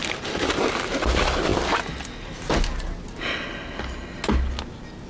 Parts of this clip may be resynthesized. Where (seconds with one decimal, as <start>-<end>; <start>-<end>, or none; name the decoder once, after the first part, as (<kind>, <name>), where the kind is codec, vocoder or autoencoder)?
none